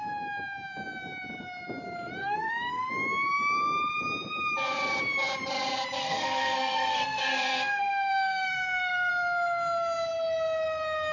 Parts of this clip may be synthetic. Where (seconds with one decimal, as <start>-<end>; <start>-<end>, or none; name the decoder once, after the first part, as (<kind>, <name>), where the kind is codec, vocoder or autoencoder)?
2.2-2.9 (codec, SNAC); 6.0-9.1